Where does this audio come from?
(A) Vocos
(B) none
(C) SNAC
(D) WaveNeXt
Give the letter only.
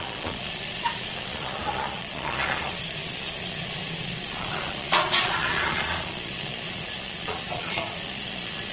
A